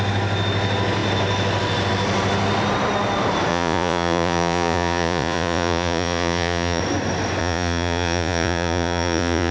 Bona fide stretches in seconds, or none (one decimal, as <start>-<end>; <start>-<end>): 0.0-3.5; 6.8-7.4